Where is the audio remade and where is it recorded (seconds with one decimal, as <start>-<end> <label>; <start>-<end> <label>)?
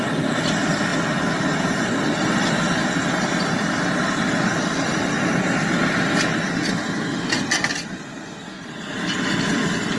0.0-10.0 recorded